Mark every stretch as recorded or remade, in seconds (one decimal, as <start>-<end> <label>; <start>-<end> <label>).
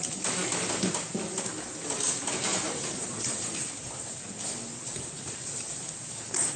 0.0-2.5 recorded; 2.5-3.7 remade; 3.7-6.6 recorded